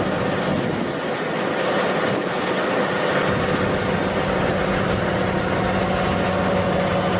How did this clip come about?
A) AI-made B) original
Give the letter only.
B